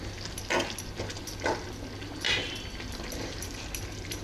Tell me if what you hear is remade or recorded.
recorded